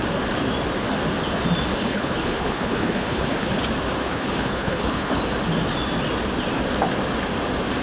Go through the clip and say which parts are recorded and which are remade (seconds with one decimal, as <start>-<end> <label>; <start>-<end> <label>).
0.0-1.8 recorded; 1.8-3.6 remade; 3.6-4.0 recorded; 4.0-5.2 remade; 5.2-7.8 recorded